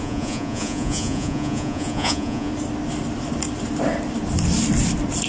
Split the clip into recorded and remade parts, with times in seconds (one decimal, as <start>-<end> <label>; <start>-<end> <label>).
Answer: 0.0-2.5 remade; 2.5-5.3 recorded